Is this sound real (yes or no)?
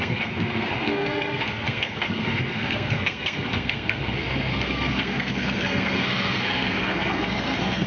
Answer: no